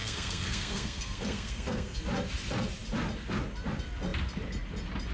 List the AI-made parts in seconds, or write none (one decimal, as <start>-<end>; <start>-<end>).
0.0-2.0